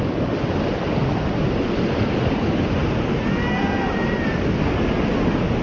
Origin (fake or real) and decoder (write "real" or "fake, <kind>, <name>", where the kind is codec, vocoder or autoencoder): real